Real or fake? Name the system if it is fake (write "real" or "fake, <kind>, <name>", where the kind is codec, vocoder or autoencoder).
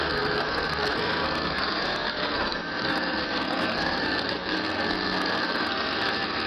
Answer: fake, codec, SNAC